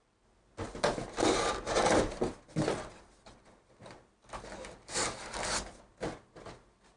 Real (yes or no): yes